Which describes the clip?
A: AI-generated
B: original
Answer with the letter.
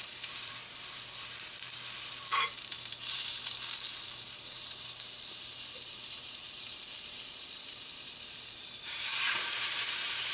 A